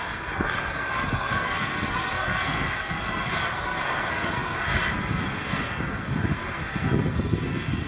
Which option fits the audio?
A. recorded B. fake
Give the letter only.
B